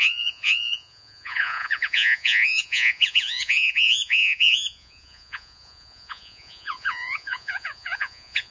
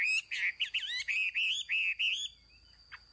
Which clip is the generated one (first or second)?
first